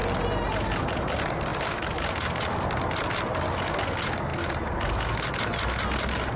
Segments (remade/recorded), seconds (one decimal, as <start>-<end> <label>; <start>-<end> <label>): 0.0-6.4 recorded